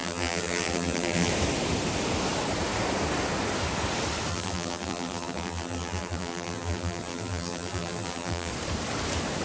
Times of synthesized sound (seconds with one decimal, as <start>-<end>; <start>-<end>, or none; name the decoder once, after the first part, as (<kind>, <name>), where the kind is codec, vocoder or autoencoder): 0.0-1.3 (vocoder, BigVGAN v2); 4.3-8.5